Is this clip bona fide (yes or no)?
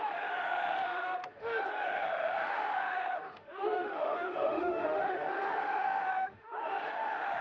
no